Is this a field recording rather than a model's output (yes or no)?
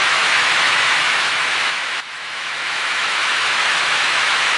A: no